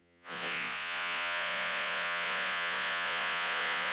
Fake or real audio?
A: fake